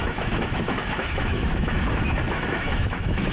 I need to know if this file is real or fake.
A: fake